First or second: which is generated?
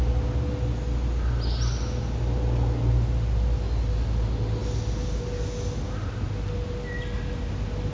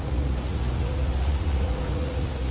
second